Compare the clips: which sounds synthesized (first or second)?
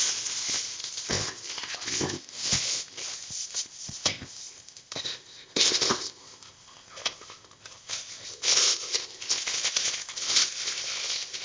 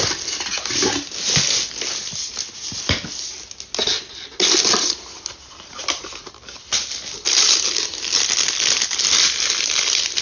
first